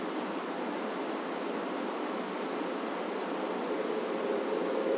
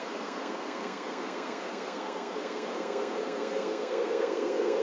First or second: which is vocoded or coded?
second